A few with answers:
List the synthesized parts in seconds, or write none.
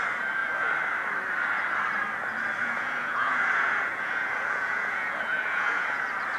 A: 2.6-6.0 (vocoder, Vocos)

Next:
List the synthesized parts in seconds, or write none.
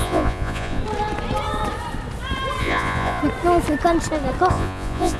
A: 0.0-0.8 (vocoder, Vocos); 2.6-3.2; 4.5-5.2